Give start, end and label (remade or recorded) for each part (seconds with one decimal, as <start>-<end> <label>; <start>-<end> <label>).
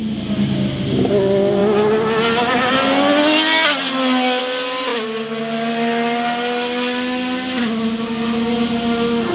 0.0-9.3 recorded